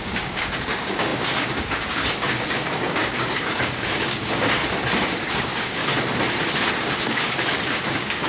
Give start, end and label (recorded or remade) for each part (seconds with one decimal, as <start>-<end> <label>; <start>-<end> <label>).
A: 0.0-4.6 remade; 4.6-5.3 recorded; 5.3-5.8 remade; 5.8-6.8 recorded; 6.8-8.3 remade